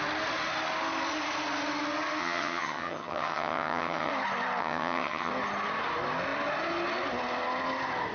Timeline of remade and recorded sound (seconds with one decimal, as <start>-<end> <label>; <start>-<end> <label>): 0.0-2.2 recorded; 2.2-4.1 remade; 4.1-4.6 recorded; 4.6-5.3 remade; 5.3-8.1 recorded